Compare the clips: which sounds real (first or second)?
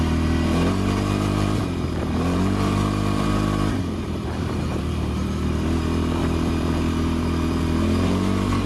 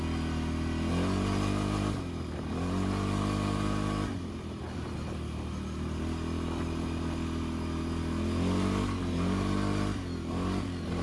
second